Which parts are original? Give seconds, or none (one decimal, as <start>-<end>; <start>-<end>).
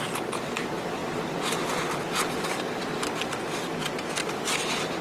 0.0-5.0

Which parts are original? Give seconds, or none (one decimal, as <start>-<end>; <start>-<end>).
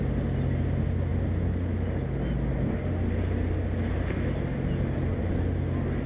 0.0-6.1